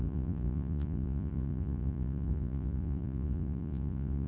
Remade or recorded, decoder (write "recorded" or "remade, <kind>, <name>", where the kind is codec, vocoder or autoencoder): remade, vocoder, Vocos